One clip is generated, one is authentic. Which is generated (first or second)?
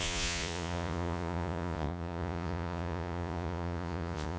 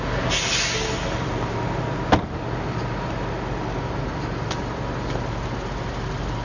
first